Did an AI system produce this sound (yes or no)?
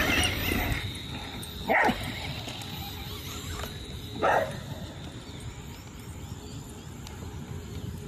no